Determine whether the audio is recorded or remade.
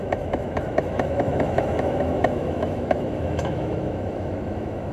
remade